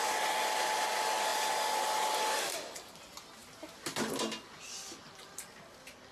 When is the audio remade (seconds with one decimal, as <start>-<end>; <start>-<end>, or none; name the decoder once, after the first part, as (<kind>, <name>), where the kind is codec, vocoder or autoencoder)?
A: none